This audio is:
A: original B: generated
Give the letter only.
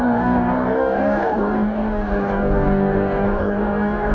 B